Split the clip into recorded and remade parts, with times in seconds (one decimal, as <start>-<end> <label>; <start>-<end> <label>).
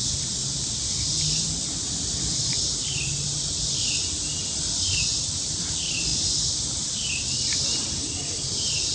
0.0-0.4 remade; 0.4-1.9 recorded; 1.9-8.9 remade